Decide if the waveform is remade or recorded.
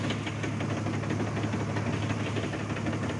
recorded